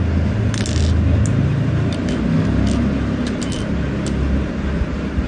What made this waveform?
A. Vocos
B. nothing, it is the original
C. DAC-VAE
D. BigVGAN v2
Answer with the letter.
B